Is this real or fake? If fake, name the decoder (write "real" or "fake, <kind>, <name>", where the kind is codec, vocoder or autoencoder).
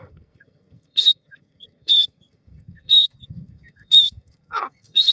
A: fake, codec, SNAC